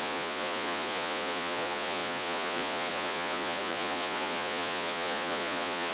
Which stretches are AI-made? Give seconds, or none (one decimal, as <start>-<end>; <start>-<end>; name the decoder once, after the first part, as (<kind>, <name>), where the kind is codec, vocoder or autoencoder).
0.0-5.9 (vocoder, Vocos)